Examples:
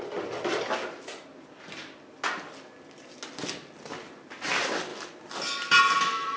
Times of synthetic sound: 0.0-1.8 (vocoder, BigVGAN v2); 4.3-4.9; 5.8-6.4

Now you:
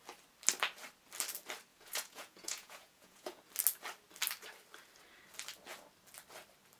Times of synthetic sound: 1.7-3.4 (vocoder, Vocos)